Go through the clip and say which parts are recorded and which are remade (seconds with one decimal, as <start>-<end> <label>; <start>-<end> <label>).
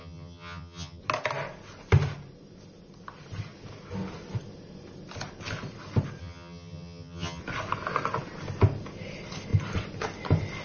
0.0-1.0 remade; 1.0-6.2 recorded; 6.2-7.4 remade; 7.4-10.6 recorded